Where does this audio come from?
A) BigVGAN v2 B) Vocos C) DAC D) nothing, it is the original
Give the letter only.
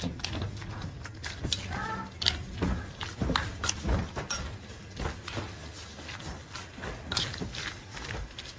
D